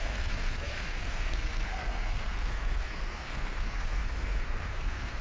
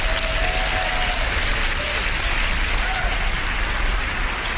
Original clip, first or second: second